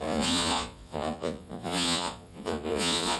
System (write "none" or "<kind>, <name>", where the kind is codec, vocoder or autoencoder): vocoder, Vocos